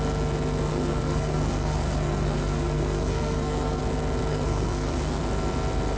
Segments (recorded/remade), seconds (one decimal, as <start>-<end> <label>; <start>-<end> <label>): 0.0-0.7 recorded; 0.7-3.8 remade; 3.8-4.3 recorded; 4.3-5.2 remade; 5.2-6.0 recorded